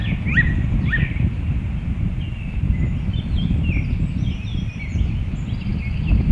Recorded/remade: recorded